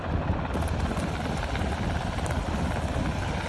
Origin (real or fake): real